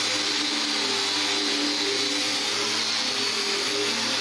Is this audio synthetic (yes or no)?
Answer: no